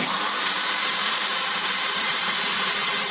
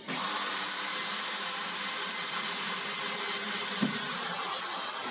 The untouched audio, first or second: second